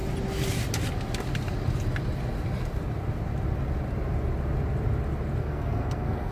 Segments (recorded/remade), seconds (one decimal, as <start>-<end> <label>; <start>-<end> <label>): 0.0-5.4 recorded; 5.4-6.3 remade